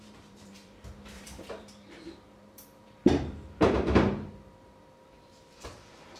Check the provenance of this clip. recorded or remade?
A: remade